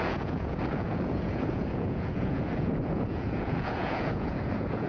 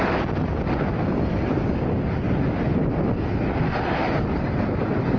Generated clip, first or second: first